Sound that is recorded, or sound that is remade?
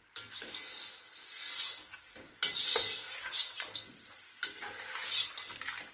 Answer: recorded